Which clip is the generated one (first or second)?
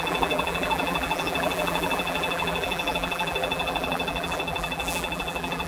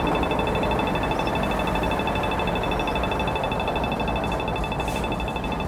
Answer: first